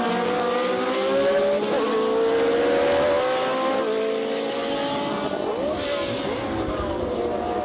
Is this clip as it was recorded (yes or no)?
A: yes